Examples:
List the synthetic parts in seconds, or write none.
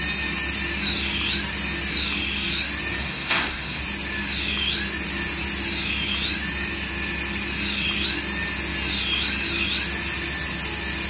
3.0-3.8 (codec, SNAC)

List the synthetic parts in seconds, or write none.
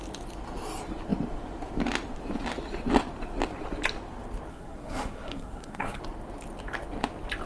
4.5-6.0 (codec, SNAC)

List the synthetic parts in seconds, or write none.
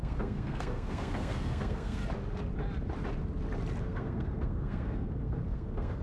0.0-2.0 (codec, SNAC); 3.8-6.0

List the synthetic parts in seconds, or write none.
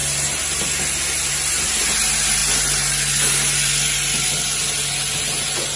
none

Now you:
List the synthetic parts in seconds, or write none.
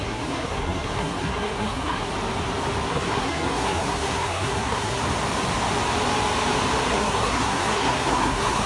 0.0-2.1 (codec, SNAC); 2.9-5.0; 6.9-8.7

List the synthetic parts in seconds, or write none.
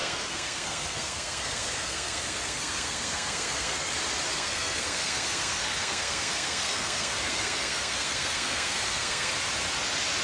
0.0-3.9 (codec, SNAC); 4.3-9.3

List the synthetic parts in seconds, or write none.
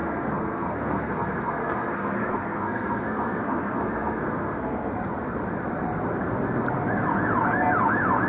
0.0-4.9 (codec, SNAC)